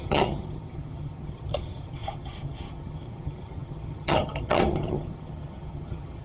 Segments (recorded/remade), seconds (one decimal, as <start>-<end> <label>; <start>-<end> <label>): 0.0-6.2 remade